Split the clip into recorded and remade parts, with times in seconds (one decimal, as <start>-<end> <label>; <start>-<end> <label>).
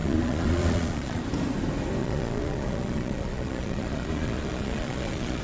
0.0-1.2 remade; 1.2-2.0 recorded; 2.0-5.4 remade